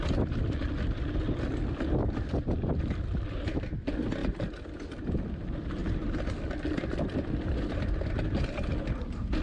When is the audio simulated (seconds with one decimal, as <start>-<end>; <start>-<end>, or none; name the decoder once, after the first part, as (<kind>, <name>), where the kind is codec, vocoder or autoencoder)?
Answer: 4.2-4.9 (vocoder, BigVGAN v2)